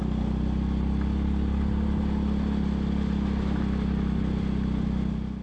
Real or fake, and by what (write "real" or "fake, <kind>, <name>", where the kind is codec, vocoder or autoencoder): real